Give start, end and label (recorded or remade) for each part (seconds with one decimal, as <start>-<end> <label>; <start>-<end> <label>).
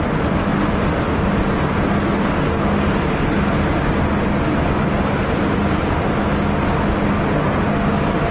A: 0.0-0.5 recorded; 0.5-1.4 remade; 1.4-8.3 recorded